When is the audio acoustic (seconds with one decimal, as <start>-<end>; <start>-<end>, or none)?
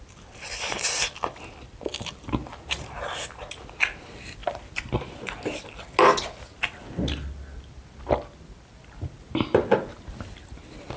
0.0-1.9; 2.5-4.4; 5.7-11.0